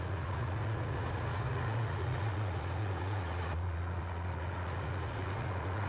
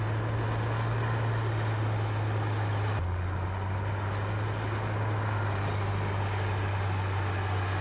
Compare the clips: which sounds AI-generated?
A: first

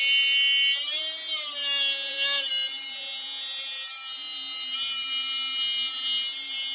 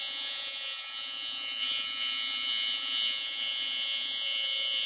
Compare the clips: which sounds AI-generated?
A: second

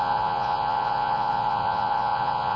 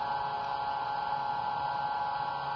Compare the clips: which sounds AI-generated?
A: first